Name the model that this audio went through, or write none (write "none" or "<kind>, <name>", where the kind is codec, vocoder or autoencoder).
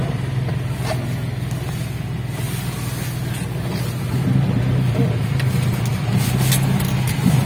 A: none